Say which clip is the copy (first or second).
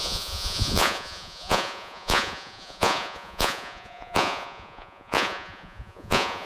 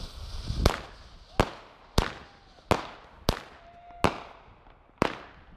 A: first